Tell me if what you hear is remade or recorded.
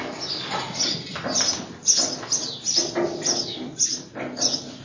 recorded